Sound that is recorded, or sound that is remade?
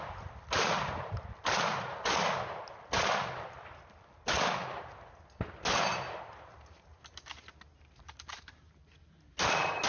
recorded